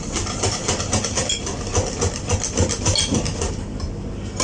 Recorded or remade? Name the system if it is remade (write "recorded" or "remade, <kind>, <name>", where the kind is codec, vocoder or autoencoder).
recorded